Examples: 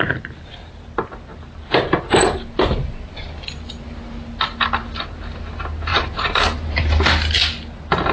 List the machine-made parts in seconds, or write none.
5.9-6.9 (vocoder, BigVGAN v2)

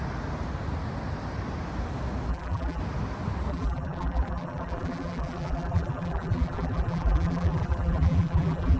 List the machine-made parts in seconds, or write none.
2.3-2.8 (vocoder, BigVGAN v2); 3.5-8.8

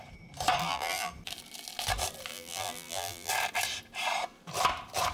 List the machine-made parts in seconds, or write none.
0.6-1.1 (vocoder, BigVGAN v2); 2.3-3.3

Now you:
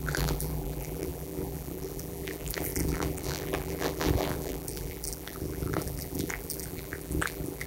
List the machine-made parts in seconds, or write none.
0.0-7.7 (vocoder, BigVGAN v2)

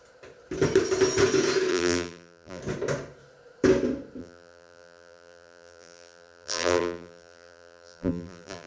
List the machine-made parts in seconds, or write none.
1.7-2.6 (vocoder, BigVGAN v2); 4.2-8.7

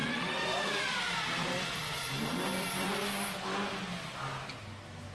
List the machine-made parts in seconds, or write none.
0.0-2.9 (vocoder, BigVGAN v2)